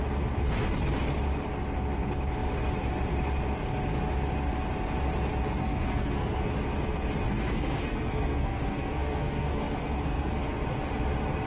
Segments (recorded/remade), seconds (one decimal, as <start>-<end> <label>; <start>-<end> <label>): 0.0-5.6 recorded; 5.6-6.5 remade; 6.5-7.3 recorded; 7.3-10.3 remade; 10.3-11.5 recorded